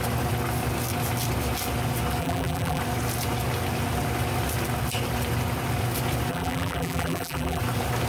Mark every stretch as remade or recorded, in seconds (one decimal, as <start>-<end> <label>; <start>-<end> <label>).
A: 0.0-2.2 recorded; 2.2-2.8 remade; 2.8-6.3 recorded; 6.3-7.6 remade; 7.6-8.1 recorded